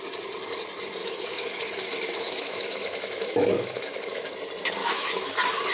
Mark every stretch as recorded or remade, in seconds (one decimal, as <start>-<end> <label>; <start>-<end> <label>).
0.0-1.0 recorded; 1.0-4.3 remade; 4.3-4.8 recorded; 4.8-5.3 remade; 5.3-5.7 recorded